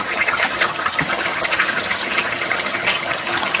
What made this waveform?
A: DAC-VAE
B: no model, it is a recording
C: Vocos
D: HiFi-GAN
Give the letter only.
D